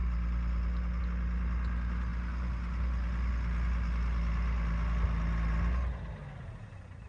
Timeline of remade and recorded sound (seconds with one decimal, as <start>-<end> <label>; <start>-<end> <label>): 0.0-7.1 recorded